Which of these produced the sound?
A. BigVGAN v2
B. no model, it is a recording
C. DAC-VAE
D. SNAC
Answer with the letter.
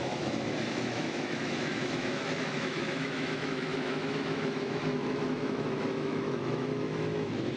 C